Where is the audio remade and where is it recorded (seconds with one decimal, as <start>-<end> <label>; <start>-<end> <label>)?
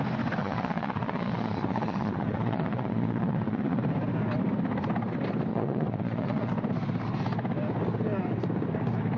0.0-0.4 recorded; 0.4-3.8 remade; 3.8-5.5 recorded; 5.5-6.5 remade; 6.5-9.2 recorded